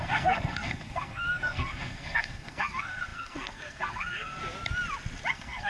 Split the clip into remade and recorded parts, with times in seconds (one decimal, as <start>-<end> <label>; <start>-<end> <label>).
0.0-4.4 remade; 4.4-5.3 recorded; 5.3-5.7 remade